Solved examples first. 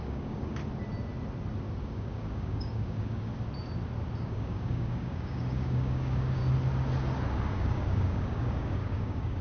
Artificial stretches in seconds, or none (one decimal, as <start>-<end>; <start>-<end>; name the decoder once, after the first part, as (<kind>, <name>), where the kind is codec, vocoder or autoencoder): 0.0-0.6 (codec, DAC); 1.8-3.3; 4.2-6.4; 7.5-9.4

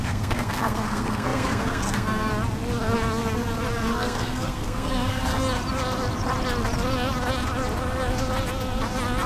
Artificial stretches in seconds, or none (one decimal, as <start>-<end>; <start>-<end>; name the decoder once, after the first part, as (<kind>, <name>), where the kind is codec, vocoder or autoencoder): 0.0-2.3 (codec, SNAC); 3.9-5.3

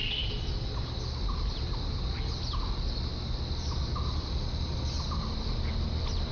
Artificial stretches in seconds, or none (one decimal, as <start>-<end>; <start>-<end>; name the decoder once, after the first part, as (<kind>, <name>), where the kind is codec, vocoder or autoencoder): none

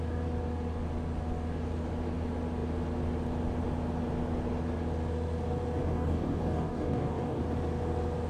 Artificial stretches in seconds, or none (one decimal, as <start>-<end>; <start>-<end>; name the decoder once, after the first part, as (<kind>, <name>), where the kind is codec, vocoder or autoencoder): 5.8-7.4 (codec, DAC)

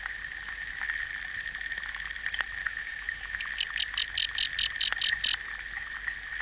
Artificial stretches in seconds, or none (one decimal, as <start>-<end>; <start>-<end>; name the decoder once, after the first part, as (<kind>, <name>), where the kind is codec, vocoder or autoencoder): 2.6-3.4 (autoencoder, DAC-VAE)